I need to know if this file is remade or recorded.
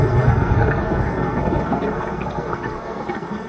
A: remade